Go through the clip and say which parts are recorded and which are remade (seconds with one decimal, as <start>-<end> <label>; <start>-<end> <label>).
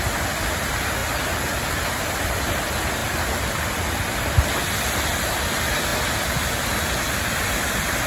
0.0-8.1 recorded